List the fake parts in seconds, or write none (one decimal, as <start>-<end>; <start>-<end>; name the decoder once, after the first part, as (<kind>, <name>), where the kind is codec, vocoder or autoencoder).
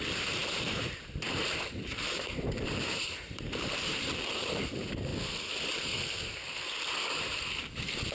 0.0-5.1 (vocoder, BigVGAN v2); 7.2-8.1